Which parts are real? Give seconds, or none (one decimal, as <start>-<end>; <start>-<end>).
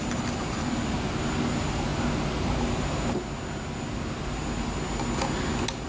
0.0-5.9